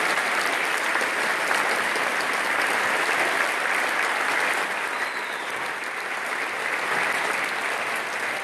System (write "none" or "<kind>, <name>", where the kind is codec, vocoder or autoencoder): none